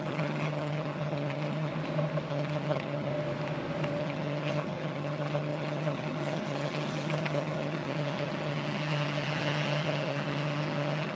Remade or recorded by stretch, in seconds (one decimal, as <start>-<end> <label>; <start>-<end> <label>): 0.0-1.7 remade; 1.7-2.3 recorded; 2.3-3.1 remade; 3.1-4.0 recorded; 4.0-11.2 remade